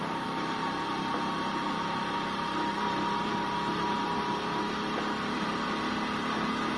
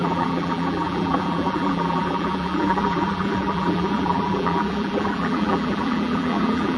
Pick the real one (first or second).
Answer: first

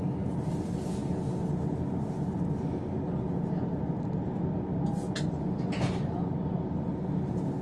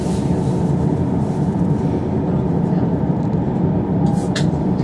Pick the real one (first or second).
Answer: first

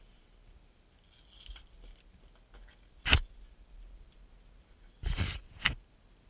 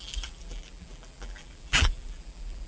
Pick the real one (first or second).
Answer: first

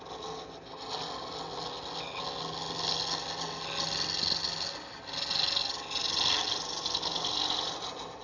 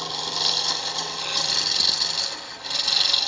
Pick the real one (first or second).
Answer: first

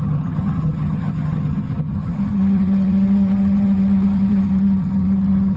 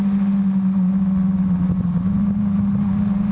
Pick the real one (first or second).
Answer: second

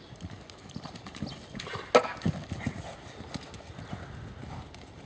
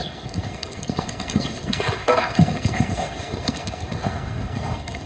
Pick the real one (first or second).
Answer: first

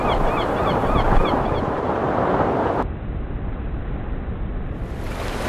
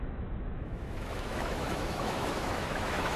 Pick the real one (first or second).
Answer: first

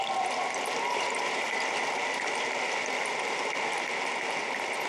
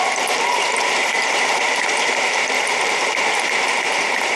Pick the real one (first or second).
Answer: first